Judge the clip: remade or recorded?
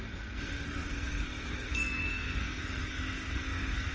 remade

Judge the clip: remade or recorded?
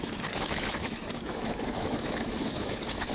remade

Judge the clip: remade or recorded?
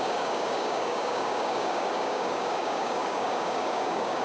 remade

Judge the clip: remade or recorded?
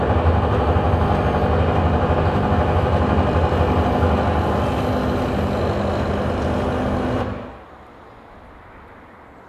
recorded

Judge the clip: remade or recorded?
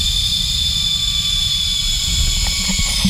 recorded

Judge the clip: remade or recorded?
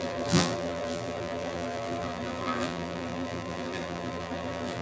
remade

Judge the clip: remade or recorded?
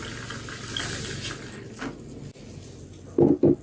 recorded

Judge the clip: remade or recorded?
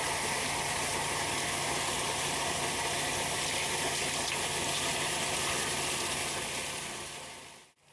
recorded